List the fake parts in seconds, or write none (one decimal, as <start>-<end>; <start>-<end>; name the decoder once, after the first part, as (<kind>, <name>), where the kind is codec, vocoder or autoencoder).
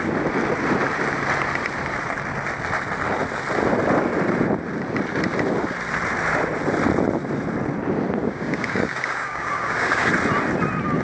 8.2-10.1 (codec, DAC)